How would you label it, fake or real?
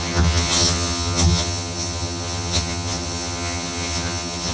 fake